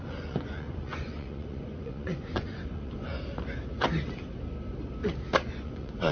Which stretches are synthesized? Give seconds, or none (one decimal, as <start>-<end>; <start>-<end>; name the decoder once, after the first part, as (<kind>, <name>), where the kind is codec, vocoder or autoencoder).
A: 0.0-3.1 (vocoder, Vocos); 5.5-6.1